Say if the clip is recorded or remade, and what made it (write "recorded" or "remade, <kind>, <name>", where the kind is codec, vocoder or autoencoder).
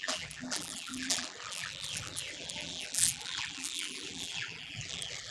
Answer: remade, vocoder, BigVGAN v2